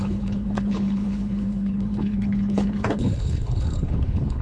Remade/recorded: remade